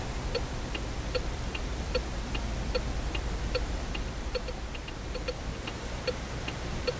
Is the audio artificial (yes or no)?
yes